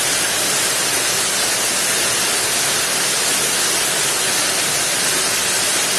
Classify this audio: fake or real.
real